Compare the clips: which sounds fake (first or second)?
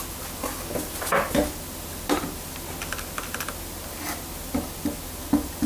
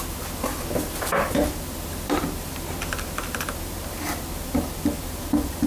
second